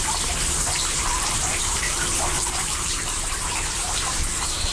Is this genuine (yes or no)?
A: no